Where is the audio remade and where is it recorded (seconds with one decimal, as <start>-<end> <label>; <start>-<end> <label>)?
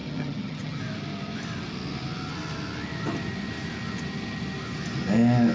0.0-0.8 remade; 0.8-5.5 recorded